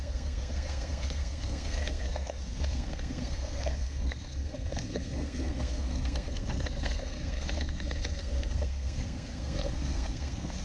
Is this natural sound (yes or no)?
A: no